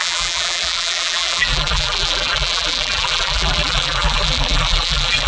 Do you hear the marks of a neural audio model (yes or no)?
yes